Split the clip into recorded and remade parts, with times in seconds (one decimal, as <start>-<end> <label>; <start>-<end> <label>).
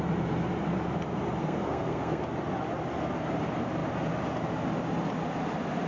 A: 0.0-1.4 recorded; 1.4-2.2 remade; 2.2-5.9 recorded